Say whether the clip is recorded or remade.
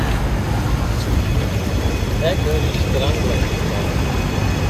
recorded